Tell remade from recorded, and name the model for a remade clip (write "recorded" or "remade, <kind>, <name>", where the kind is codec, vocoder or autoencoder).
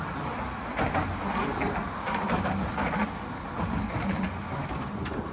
recorded